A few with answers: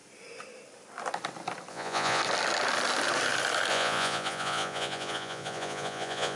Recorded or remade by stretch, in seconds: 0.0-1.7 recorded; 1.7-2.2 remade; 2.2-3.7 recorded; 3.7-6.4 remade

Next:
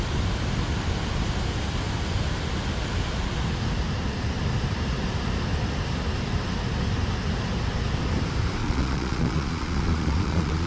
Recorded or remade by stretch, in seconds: 0.0-8.6 recorded; 8.6-10.7 remade

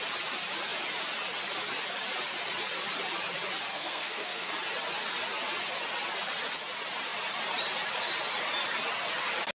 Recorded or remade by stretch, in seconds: 0.0-3.7 recorded; 3.7-4.5 remade; 4.5-9.5 recorded

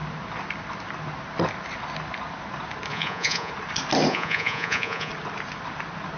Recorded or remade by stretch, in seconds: 0.0-2.9 recorded; 2.9-3.5 remade; 3.5-4.1 recorded; 4.1-5.1 remade; 5.1-6.2 recorded

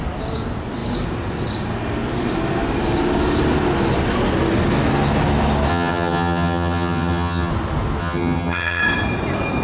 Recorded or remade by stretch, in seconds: 0.0-5.7 recorded; 5.7-7.5 remade; 7.5-8.0 recorded; 8.0-8.8 remade; 8.8-9.6 recorded

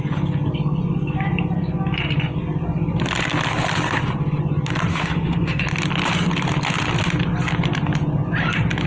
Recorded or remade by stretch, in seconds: 0.0-4.9 recorded; 4.9-5.6 remade; 5.6-8.9 recorded

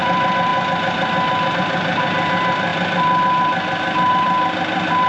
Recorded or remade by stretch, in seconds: 0.0-0.5 remade; 0.5-1.5 recorded; 1.5-2.7 remade; 2.7-4.1 recorded; 4.1-5.1 remade

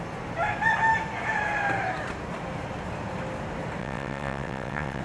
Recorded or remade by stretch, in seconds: 0.0-3.8 recorded; 3.8-5.0 remade